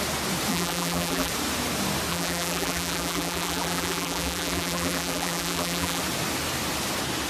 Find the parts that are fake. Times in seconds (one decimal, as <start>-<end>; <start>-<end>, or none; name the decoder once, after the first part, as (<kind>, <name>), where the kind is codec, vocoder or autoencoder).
0.5-1.3 (vocoder, BigVGAN v2); 2.1-6.0